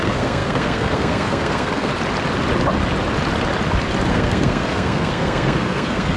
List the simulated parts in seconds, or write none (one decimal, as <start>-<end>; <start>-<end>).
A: 0.0-1.9; 4.1-6.2